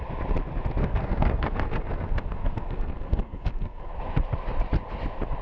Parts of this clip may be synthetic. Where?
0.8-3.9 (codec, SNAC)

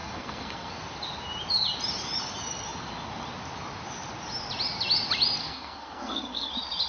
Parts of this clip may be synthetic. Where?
0.0-0.7 (codec, SNAC); 5.4-6.5

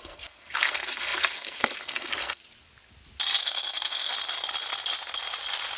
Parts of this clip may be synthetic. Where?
0.0-2.4 (codec, SNAC); 3.4-4.1

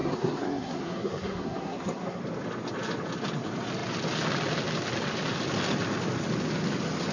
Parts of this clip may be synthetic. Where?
0.0-2.2 (codec, SNAC)